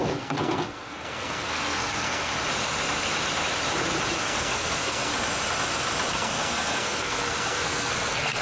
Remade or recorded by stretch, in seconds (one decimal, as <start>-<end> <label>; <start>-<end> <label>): 0.0-2.3 remade; 2.3-4.2 recorded; 4.2-5.1 remade; 5.1-6.1 recorded; 6.1-8.4 remade